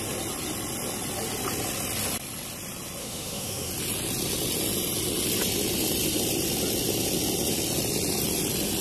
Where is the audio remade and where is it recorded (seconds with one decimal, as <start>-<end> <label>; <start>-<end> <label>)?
0.0-3.0 recorded; 3.0-3.7 remade; 3.7-8.8 recorded